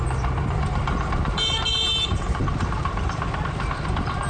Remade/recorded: remade